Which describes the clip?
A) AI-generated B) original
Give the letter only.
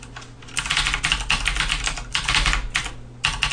B